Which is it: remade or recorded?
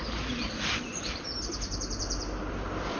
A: recorded